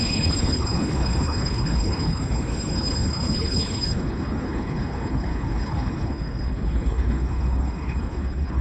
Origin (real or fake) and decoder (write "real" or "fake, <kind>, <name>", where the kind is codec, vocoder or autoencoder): fake, codec, HILCodec